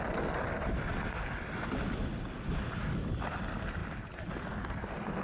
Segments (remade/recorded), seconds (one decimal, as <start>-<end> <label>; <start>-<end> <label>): 0.0-5.2 recorded